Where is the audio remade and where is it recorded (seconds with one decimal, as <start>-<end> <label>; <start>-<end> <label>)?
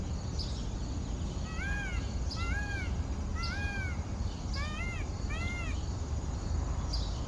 0.0-7.3 recorded